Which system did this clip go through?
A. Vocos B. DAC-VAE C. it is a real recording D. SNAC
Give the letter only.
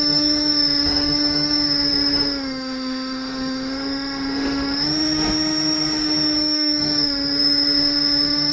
B